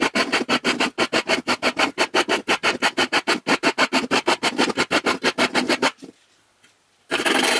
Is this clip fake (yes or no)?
yes